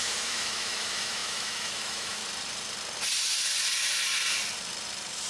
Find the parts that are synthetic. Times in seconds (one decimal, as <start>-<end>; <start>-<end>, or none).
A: 0.0-2.2